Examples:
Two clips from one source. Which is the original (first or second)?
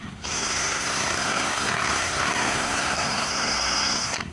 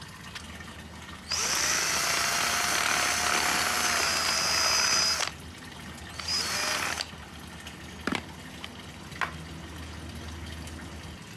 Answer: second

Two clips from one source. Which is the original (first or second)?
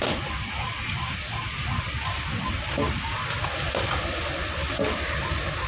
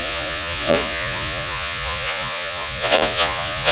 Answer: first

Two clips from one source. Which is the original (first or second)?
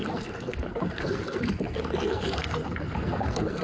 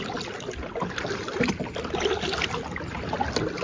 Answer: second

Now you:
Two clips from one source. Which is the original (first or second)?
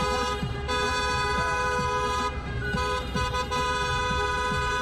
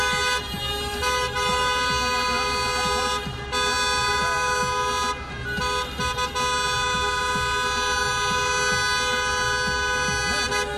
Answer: second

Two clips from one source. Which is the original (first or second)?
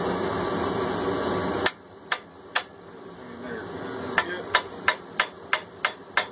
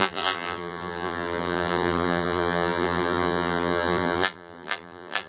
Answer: first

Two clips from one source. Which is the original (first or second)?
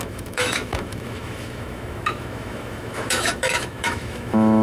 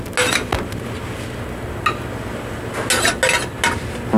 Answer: second